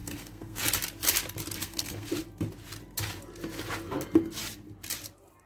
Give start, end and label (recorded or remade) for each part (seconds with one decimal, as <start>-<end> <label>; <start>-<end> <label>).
0.0-0.6 remade; 0.6-1.6 recorded; 1.6-2.1 remade; 2.1-5.5 recorded